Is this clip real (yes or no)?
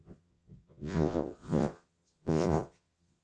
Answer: no